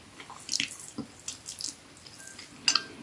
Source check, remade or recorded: recorded